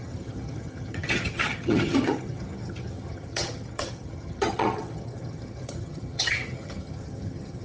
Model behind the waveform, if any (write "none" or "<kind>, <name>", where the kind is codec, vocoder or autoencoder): vocoder, HiFi-GAN